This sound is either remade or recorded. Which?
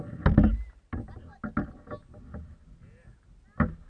recorded